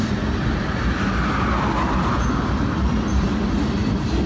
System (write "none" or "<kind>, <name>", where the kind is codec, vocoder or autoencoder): none